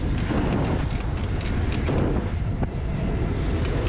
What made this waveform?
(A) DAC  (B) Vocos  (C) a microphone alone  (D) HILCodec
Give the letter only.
C